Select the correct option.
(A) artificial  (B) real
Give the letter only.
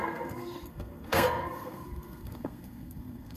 A